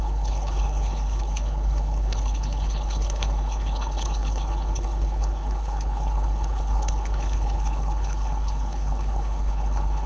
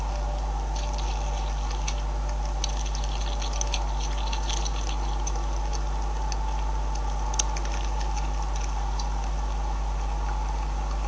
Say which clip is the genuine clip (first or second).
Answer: second